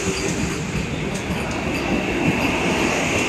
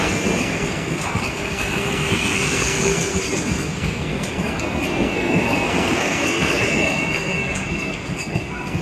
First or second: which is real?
first